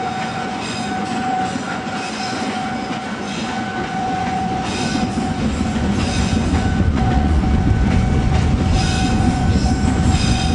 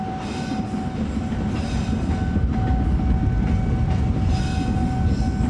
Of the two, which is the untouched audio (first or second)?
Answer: second